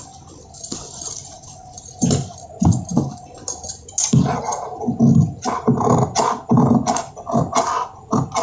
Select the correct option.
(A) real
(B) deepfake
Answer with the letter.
A